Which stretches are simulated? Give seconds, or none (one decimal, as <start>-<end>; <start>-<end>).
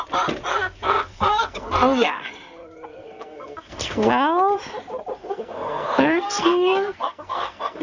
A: 0.5-2.3; 2.9-4.1; 5.2-7.8